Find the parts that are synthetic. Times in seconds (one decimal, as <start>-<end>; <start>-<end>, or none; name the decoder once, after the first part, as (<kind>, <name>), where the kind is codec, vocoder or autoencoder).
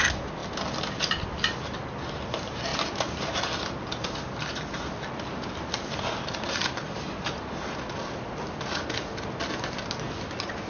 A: none